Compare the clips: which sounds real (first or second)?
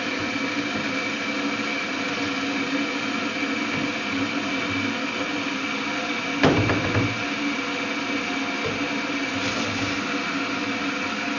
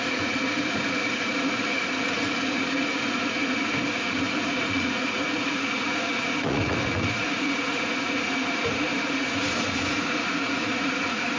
first